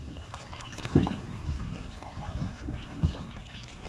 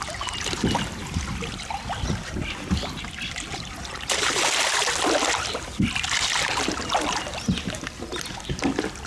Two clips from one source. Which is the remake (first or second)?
first